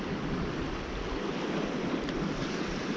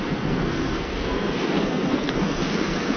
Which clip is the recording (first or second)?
first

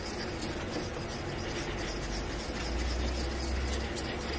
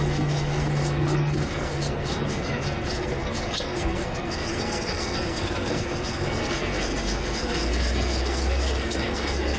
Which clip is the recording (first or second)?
first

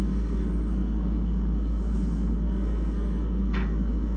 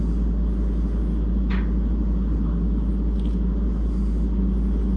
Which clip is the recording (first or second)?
second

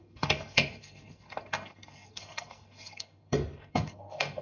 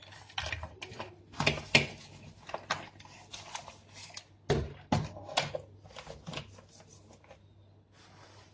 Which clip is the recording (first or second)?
second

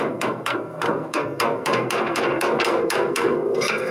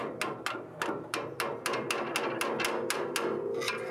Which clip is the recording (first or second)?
second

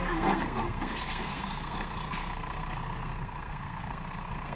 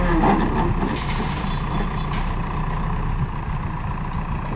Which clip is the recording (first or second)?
second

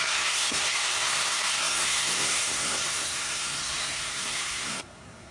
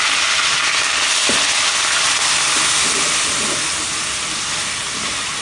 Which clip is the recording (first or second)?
second